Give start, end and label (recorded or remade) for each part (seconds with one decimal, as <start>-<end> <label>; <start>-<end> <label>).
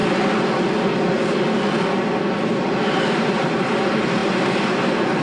0.0-3.1 recorded; 3.1-5.2 remade